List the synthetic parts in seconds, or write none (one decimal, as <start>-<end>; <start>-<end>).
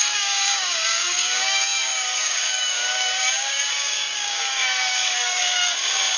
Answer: 0.0-6.2